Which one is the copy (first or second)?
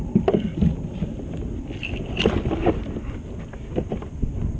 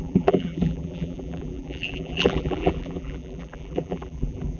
second